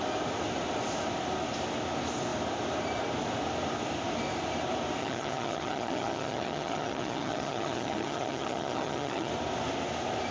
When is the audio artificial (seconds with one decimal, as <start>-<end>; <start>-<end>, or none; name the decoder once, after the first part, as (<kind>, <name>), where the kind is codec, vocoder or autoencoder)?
5.0-9.3 (vocoder, HiFi-GAN)